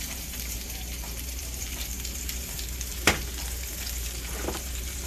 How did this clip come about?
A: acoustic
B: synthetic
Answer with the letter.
B